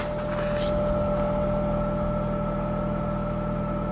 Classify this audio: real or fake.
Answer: real